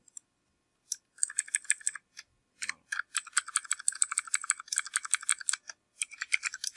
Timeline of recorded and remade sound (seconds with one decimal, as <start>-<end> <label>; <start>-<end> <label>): 0.0-6.8 recorded

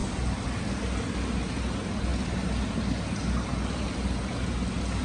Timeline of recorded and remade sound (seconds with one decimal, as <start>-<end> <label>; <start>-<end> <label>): 0.0-5.0 recorded

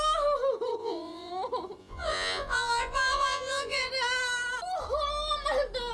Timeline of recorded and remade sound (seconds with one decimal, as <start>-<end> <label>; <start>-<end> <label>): 0.0-0.8 recorded; 0.8-1.3 remade; 1.3-1.8 recorded; 1.8-3.9 remade; 3.9-5.9 recorded

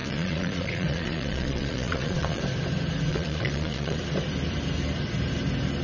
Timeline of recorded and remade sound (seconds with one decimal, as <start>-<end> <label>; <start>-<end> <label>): 0.0-2.4 remade; 2.4-3.1 recorded; 3.1-4.0 remade; 4.0-5.8 recorded

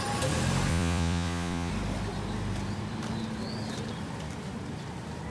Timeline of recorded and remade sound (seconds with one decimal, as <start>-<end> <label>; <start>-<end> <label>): 0.0-0.7 recorded; 0.7-1.7 remade; 1.7-5.3 recorded

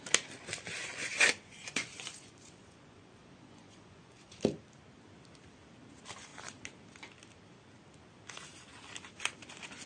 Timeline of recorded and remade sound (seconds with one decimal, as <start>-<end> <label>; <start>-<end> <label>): 0.0-0.8 recorded; 0.8-4.4 remade; 4.4-9.9 recorded

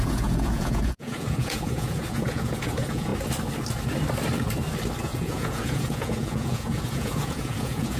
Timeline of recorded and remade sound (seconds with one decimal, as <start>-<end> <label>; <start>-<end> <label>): 0.0-3.1 remade; 3.1-5.0 recorded; 5.0-8.0 remade